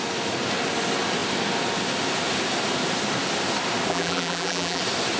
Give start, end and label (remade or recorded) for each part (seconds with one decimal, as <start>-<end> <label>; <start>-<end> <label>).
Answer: 0.0-3.9 recorded; 3.9-4.8 remade; 4.8-5.2 recorded